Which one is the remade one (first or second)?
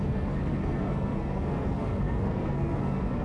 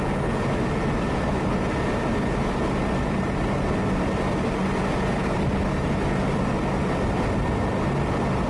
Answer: first